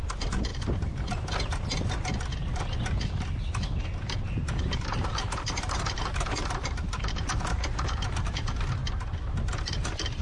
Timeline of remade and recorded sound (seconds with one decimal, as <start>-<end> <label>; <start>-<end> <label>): 0.0-0.5 remade; 0.5-4.2 recorded; 4.2-8.8 remade; 8.8-9.6 recorded; 9.6-10.2 remade